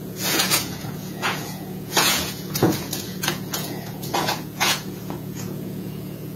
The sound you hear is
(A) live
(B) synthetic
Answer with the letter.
B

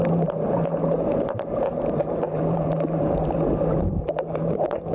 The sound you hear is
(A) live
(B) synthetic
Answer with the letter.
B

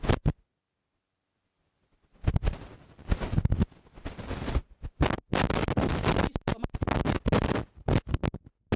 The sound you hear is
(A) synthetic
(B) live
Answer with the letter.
B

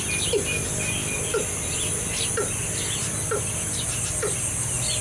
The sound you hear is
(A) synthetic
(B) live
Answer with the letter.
B